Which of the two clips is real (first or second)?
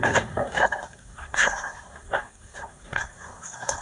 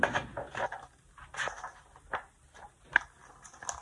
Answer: second